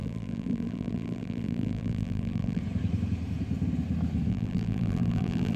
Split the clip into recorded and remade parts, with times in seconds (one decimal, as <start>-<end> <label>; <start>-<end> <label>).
0.0-2.6 remade; 2.6-4.3 recorded; 4.3-5.6 remade